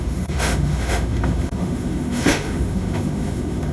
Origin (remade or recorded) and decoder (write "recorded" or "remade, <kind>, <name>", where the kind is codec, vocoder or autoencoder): remade, autoencoder, DAC-VAE